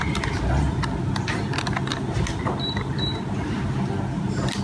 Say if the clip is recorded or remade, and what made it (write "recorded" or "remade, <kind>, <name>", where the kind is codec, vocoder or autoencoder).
recorded